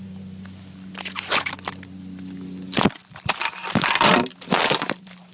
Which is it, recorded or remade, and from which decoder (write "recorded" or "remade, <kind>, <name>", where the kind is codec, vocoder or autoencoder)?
remade, vocoder, BigVGAN v2